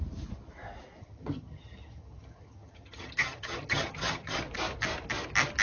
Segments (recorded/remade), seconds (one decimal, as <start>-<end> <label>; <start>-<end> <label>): 0.0-1.0 recorded; 1.0-4.4 remade; 4.4-5.6 recorded